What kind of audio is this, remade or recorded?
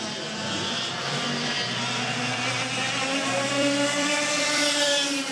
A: remade